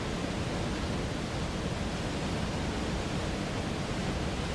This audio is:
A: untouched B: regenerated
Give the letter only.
A